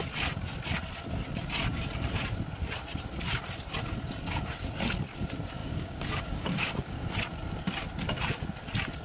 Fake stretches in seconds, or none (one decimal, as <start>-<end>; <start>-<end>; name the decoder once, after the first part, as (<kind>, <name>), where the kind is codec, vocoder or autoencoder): 5.6-7.1 (codec, DAC)